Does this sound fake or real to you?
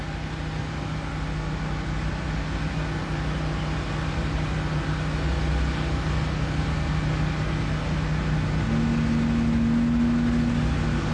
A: real